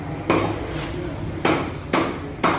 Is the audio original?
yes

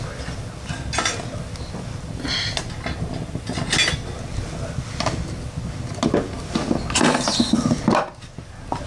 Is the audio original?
yes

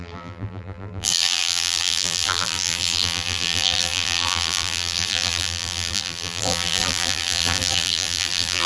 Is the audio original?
no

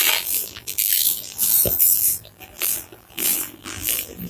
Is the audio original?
no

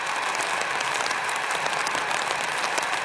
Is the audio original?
no